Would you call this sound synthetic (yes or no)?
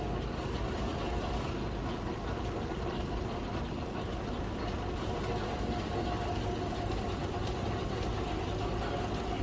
no